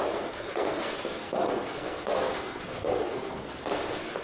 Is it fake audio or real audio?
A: fake